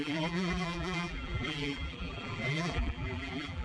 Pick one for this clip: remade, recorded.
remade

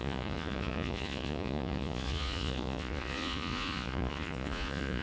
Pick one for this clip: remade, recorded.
remade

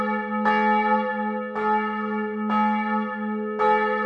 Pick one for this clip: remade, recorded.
recorded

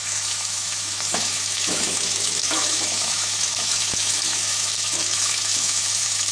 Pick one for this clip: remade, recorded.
remade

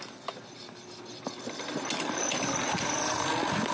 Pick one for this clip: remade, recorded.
recorded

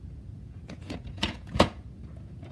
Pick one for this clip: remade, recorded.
remade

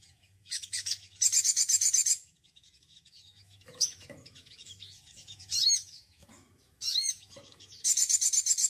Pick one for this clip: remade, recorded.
remade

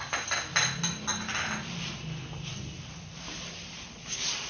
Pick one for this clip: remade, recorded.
recorded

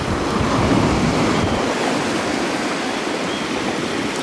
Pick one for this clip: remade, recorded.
recorded